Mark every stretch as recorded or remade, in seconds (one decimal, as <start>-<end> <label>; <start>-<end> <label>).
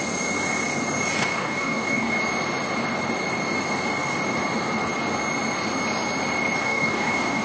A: 0.0-1.3 recorded; 1.3-2.1 remade; 2.1-6.6 recorded; 6.6-7.4 remade